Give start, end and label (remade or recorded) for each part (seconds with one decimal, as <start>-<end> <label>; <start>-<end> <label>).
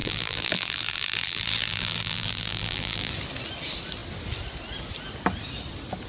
0.0-3.1 remade; 3.1-6.1 recorded